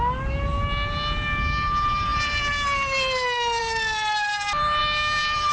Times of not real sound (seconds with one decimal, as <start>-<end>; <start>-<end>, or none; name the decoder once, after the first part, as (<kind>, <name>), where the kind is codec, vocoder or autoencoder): none